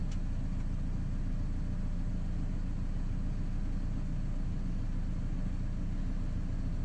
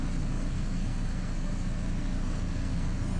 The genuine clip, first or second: first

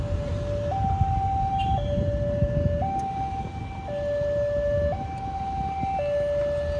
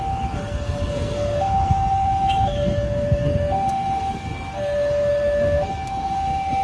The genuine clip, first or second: first